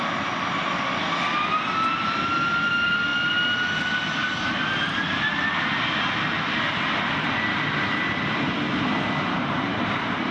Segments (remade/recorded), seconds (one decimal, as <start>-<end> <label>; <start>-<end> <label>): 0.0-10.3 recorded